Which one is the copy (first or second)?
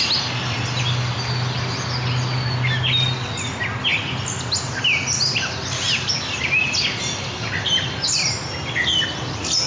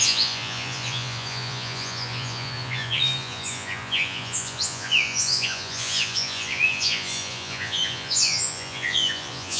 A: second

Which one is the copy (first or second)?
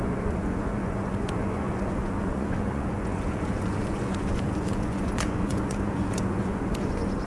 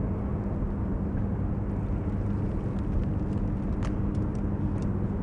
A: first